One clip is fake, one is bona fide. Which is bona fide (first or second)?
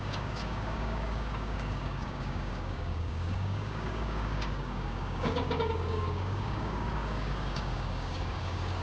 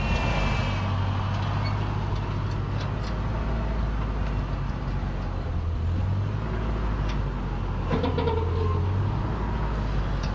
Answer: second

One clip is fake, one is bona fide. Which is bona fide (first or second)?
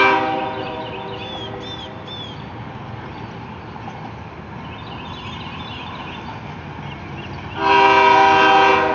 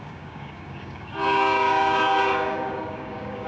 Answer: first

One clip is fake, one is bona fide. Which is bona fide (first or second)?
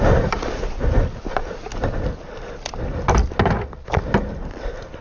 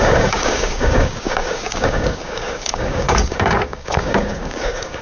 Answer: first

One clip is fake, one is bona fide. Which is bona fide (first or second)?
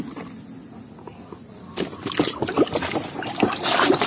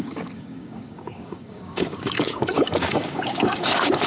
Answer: first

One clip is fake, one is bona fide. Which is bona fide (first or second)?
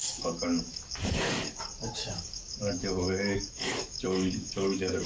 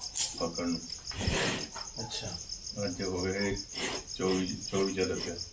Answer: second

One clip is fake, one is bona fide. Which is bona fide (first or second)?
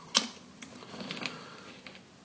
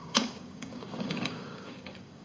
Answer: first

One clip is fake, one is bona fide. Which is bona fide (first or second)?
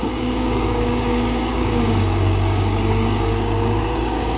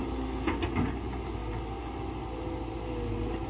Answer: second